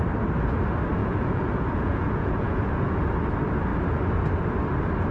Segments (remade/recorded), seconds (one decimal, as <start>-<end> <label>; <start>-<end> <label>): 0.0-1.0 recorded; 1.0-3.1 remade; 3.1-5.1 recorded

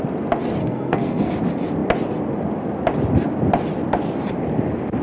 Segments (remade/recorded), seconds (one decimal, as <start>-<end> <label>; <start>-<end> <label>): 0.0-0.6 recorded; 0.6-1.3 remade; 1.3-5.0 recorded

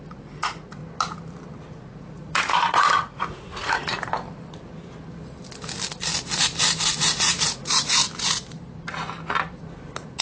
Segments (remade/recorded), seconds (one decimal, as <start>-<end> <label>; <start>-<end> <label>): 0.0-0.8 remade; 0.8-1.7 recorded; 1.7-3.9 remade; 3.9-7.0 recorded; 7.0-8.0 remade; 8.0-10.2 recorded

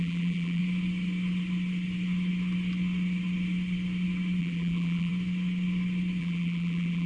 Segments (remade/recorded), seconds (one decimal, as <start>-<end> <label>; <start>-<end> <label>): 0.0-0.6 remade; 0.6-4.4 recorded; 4.4-5.1 remade; 5.1-6.2 recorded; 6.2-7.1 remade

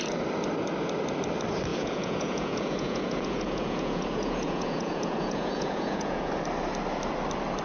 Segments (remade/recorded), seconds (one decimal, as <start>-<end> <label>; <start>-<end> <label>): 0.0-1.7 recorded; 1.7-6.3 remade; 6.3-7.6 recorded